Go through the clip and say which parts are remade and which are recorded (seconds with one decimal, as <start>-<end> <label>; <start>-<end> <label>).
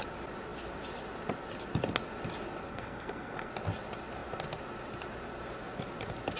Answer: 0.0-2.7 recorded; 2.7-3.5 remade; 3.5-6.4 recorded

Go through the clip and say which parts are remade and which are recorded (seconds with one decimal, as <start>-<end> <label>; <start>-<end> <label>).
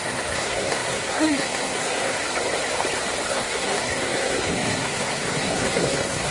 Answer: 0.0-2.2 remade; 2.2-3.3 recorded; 3.3-6.3 remade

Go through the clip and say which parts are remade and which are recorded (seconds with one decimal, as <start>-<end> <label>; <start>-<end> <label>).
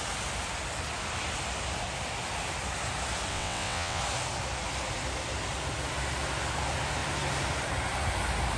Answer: 0.0-3.3 recorded; 3.3-4.0 remade; 4.0-8.6 recorded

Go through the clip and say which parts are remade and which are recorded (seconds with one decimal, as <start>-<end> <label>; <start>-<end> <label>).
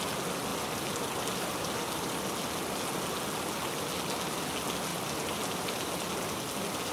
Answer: 0.0-0.5 recorded; 0.5-2.2 remade; 2.2-4.9 recorded; 4.9-5.9 remade; 5.9-6.9 recorded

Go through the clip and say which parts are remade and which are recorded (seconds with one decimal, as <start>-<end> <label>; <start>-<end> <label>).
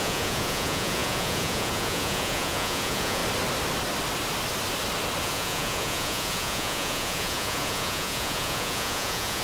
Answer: 0.0-3.2 remade; 3.2-5.2 recorded; 5.2-9.4 remade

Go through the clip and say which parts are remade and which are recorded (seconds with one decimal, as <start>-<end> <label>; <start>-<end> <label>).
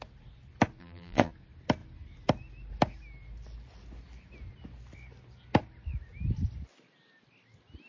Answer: 0.0-0.8 recorded; 0.8-1.3 remade; 1.3-7.9 recorded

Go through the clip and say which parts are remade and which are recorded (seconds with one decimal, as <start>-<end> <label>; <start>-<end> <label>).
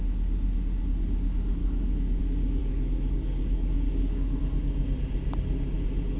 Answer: 0.0-1.6 recorded; 1.6-2.2 remade; 2.2-2.6 recorded; 2.6-4.4 remade; 4.4-6.2 recorded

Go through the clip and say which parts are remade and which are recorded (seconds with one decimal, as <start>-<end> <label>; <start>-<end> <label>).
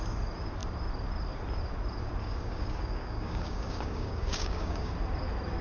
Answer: 0.0-2.2 recorded; 2.2-4.9 remade; 4.9-5.6 recorded